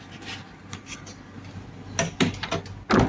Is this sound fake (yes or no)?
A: no